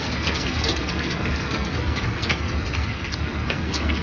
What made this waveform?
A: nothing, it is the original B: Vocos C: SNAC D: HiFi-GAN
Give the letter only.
C